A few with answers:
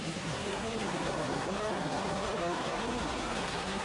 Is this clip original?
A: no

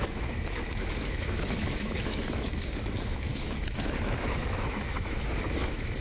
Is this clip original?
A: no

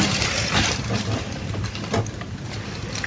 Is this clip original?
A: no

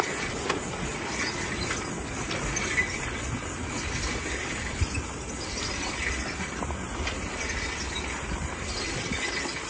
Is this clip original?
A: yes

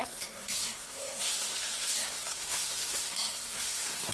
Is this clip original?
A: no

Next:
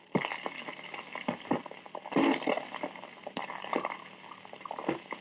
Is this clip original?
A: yes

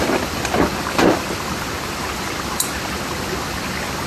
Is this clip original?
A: yes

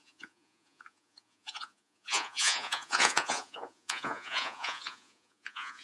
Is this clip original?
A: no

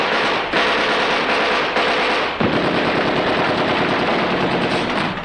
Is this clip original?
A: yes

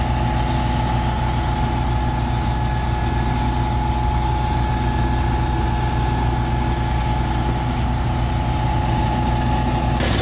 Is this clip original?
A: yes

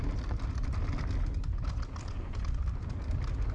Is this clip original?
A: yes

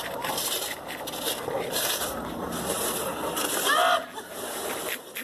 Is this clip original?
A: yes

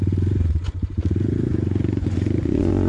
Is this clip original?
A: no